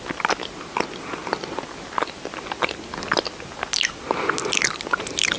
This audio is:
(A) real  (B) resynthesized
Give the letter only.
A